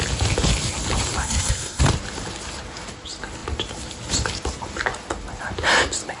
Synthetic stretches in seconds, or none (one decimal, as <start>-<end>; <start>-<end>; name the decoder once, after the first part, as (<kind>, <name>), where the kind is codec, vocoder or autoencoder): 1.2-1.8 (codec, SNAC)